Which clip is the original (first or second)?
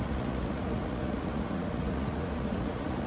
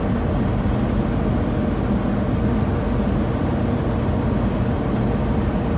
second